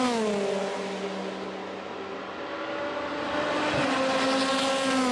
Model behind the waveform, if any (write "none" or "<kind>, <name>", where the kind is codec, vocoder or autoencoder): none